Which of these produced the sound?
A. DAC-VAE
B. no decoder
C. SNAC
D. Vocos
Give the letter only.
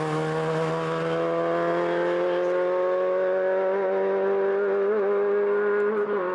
B